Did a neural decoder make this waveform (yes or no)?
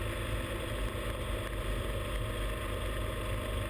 no